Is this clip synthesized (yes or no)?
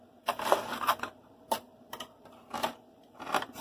no